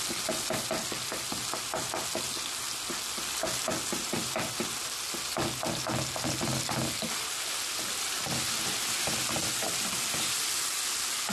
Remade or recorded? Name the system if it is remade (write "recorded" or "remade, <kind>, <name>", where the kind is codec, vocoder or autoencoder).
recorded